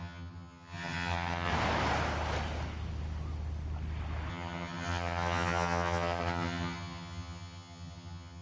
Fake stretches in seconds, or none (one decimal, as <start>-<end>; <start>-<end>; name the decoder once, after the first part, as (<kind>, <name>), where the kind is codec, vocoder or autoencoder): 0.0-1.5 (vocoder, HiFi-GAN); 4.3-8.4